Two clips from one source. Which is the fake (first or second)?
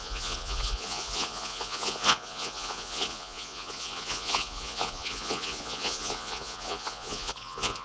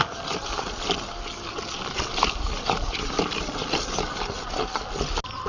first